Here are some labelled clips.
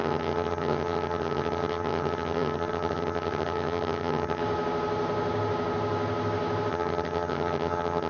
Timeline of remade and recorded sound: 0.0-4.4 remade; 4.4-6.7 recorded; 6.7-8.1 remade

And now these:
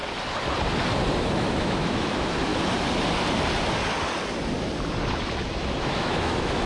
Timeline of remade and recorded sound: 0.0-1.2 recorded; 1.2-2.5 remade; 2.5-5.8 recorded; 5.8-6.7 remade